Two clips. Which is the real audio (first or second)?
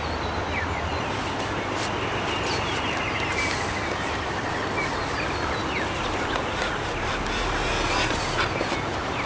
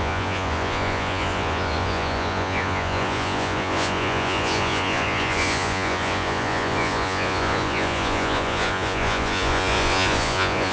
first